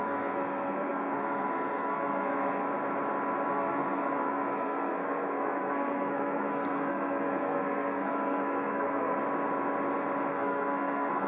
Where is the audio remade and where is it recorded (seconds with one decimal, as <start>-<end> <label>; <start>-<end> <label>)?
0.0-2.7 remade; 2.7-3.5 recorded; 3.5-9.2 remade; 9.2-10.3 recorded; 10.3-11.3 remade